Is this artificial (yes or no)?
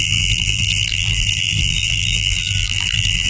yes